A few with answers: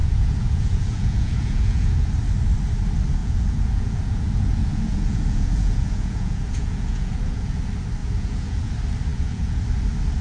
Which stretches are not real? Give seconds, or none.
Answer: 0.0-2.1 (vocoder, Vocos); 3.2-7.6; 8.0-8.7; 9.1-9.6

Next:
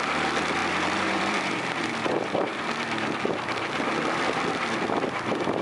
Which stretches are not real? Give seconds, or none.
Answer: 0.0-2.5 (vocoder, BigVGAN v2); 4.5-5.6

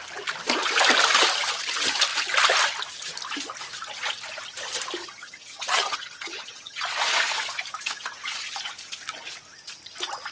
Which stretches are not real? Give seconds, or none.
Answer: 5.0-6.8 (vocoder, HiFi-GAN)

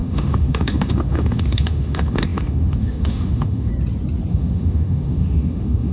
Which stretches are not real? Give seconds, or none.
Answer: 0.0-3.7 (autoencoder, DAC-VAE); 4.3-5.9

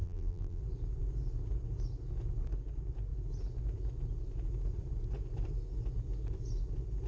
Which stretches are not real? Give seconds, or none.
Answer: 0.0-0.6 (vocoder, BigVGAN v2)

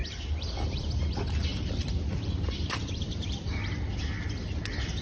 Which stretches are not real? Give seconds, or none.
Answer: 0.0-1.1 (vocoder, BigVGAN v2); 1.5-4.0

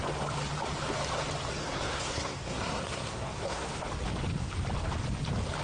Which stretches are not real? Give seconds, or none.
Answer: 1.6-3.9 (codec, SNAC)